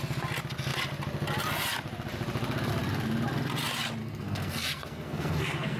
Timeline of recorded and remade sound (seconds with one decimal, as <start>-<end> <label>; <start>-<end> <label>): 0.0-4.0 recorded; 4.0-5.8 remade